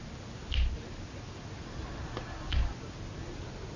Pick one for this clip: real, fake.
real